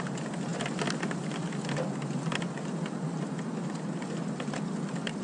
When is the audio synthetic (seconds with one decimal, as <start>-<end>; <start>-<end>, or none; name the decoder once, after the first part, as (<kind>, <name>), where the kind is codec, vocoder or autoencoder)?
none